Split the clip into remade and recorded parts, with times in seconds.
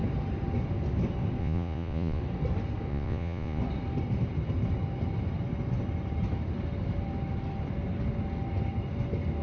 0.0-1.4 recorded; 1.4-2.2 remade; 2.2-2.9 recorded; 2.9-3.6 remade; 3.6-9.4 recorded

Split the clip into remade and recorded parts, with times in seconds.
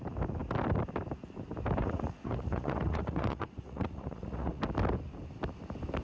0.0-1.8 recorded; 1.8-4.6 remade; 4.6-6.0 recorded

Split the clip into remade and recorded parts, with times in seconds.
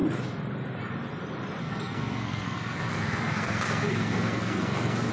0.0-1.6 recorded; 1.6-5.1 remade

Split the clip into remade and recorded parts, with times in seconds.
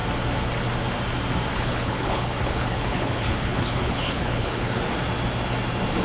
0.0-1.5 recorded; 1.5-4.8 remade; 4.8-6.0 recorded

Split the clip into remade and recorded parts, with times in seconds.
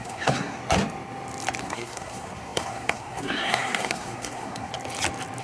0.0-0.6 remade; 0.6-1.6 recorded; 1.6-4.7 remade; 4.7-5.4 recorded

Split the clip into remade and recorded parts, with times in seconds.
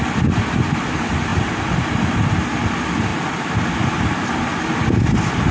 0.0-3.1 recorded; 3.1-3.6 remade; 3.6-5.5 recorded